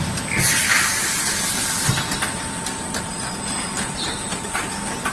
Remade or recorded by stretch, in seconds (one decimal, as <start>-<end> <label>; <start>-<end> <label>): 0.0-5.1 recorded

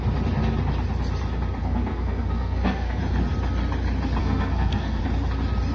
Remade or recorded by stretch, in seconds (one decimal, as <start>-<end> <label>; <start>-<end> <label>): 0.0-1.6 recorded; 1.6-3.0 remade; 3.0-4.2 recorded; 4.2-5.0 remade; 5.0-5.7 recorded

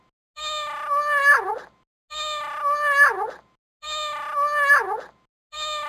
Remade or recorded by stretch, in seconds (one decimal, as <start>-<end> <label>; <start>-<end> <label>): 0.0-5.9 recorded

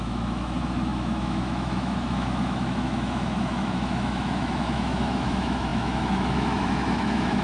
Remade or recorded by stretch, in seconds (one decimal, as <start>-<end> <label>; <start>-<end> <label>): 0.0-7.4 remade

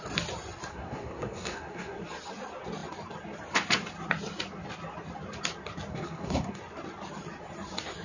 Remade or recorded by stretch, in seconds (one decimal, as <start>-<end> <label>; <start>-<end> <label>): 0.0-0.7 recorded; 0.7-2.0 remade; 2.0-5.9 recorded; 5.9-6.6 remade; 6.6-8.0 recorded

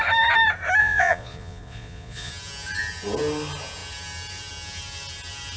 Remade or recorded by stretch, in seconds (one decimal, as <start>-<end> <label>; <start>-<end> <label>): 0.0-0.8 recorded; 0.8-2.3 remade; 2.3-5.6 recorded

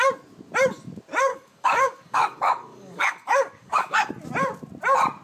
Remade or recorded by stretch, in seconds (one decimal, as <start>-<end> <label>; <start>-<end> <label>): 0.0-1.3 recorded; 1.3-4.1 remade; 4.1-5.2 recorded

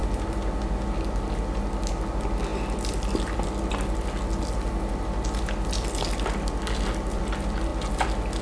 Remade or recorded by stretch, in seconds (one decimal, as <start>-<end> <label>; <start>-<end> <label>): 0.0-8.4 recorded